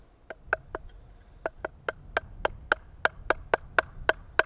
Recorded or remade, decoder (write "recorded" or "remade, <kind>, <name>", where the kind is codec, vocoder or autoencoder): recorded